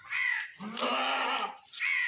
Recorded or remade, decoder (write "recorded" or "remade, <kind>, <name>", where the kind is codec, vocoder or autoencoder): recorded